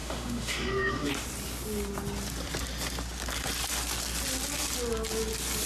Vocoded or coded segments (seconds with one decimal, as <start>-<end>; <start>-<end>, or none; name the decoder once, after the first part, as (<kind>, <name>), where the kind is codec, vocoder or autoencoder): 0.0-1.1 (autoencoder, DAC-VAE)